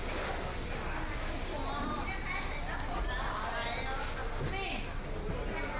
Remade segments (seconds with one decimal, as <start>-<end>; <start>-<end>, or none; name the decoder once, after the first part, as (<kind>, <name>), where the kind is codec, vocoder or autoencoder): none